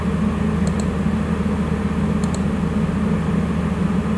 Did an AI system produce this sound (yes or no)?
no